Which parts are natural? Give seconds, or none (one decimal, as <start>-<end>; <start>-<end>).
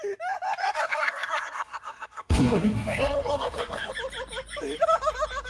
0.0-0.6; 3.9-5.5